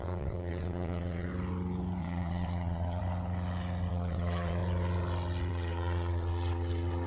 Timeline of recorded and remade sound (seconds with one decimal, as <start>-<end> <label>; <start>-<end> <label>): 0.0-1.3 remade; 1.3-2.0 recorded; 2.0-3.0 remade; 3.0-3.9 recorded; 3.9-4.6 remade; 4.6-5.5 recorded; 5.5-7.1 remade